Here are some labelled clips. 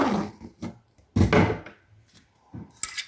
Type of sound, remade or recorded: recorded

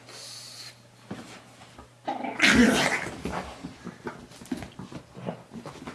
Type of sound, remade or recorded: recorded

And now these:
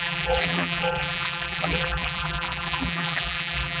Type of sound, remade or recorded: remade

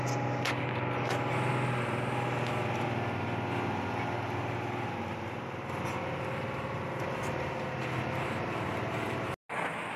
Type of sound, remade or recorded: recorded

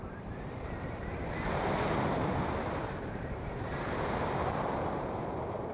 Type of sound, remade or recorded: remade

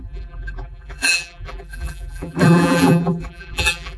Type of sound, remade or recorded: remade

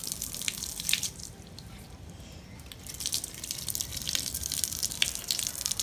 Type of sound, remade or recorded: remade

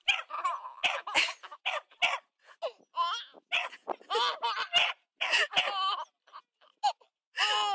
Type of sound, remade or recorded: recorded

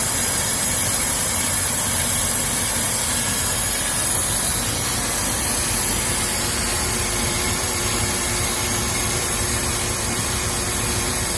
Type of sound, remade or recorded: remade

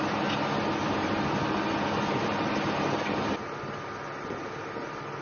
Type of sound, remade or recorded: recorded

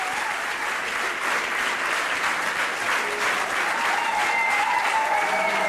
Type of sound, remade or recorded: recorded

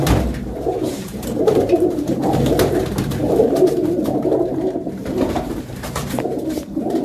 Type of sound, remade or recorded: remade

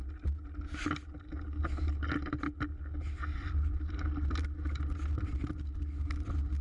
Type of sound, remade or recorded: recorded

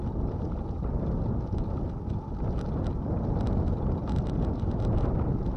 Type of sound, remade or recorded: recorded